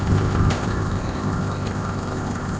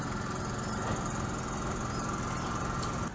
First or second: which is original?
second